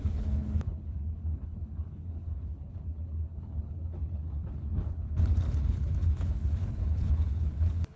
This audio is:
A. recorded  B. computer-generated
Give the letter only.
B